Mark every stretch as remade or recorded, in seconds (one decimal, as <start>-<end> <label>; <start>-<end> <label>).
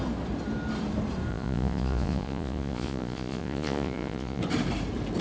0.0-1.3 recorded; 1.3-4.4 remade; 4.4-5.2 recorded